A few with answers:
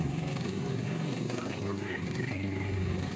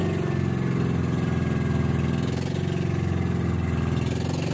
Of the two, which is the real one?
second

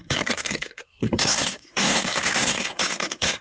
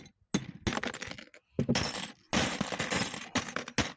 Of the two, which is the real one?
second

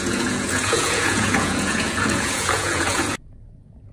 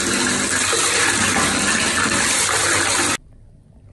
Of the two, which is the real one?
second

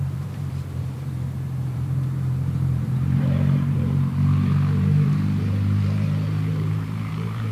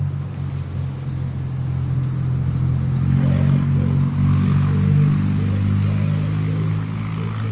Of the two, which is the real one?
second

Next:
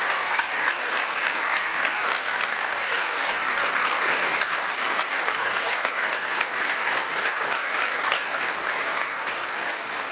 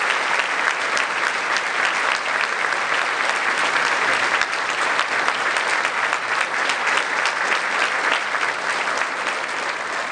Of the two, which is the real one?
second